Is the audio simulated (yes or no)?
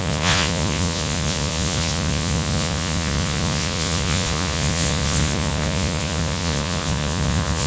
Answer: yes